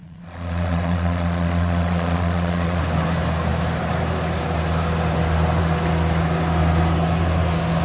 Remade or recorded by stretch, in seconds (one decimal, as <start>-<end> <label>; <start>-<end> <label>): 0.0-2.8 remade; 2.8-7.8 recorded